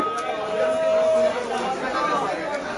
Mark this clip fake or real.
real